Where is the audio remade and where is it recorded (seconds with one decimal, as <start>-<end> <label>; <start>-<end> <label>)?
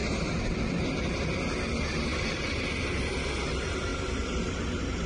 0.0-5.1 recorded